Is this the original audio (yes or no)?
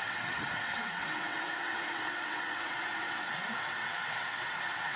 no